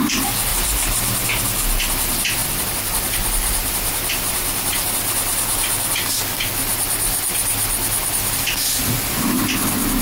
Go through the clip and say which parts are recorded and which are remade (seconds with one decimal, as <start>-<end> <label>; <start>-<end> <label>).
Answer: 0.0-0.5 recorded; 0.5-1.4 remade; 1.4-2.4 recorded; 2.4-4.9 remade; 4.9-10.0 recorded